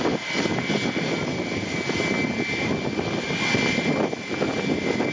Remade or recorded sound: recorded